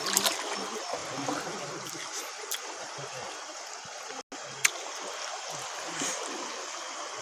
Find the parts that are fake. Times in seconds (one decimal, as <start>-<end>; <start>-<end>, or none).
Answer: none

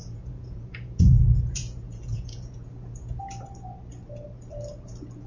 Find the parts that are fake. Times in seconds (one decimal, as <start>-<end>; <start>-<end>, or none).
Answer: 0.0-3.2